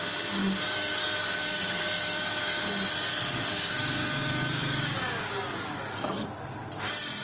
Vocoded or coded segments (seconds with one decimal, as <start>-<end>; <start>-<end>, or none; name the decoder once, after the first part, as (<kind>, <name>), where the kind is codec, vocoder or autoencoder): 0.4-2.6 (codec, DAC); 3.1-5.8